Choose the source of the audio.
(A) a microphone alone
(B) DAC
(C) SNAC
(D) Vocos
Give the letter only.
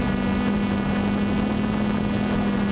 A